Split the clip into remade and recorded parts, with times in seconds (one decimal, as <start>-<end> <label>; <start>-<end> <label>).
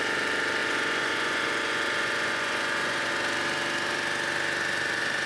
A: 0.0-0.6 recorded; 0.6-3.1 remade; 3.1-5.3 recorded